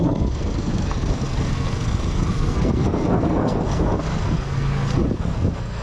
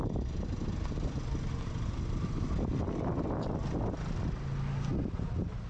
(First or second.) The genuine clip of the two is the second